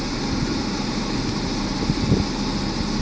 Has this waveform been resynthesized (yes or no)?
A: no